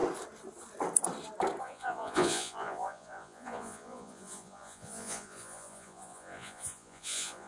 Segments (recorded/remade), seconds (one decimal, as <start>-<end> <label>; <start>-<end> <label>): 0.0-1.6 recorded; 1.6-7.5 remade